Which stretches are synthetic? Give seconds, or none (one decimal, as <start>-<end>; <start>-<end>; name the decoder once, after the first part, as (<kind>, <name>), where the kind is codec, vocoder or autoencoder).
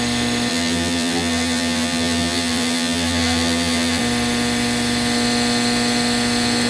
0.5-4.0 (vocoder, BigVGAN v2)